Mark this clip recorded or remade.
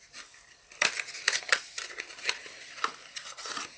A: remade